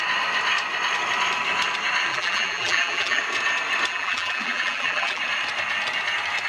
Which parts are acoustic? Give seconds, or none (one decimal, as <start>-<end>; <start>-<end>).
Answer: 0.0-2.1; 3.2-3.9; 5.2-6.5